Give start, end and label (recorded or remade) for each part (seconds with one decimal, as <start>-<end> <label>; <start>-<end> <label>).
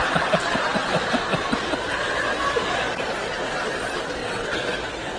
0.0-4.2 recorded; 4.2-4.8 remade; 4.8-5.2 recorded